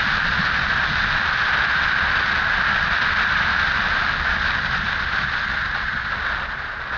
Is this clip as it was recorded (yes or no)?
yes